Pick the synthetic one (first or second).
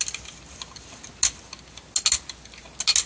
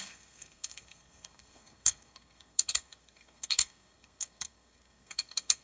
second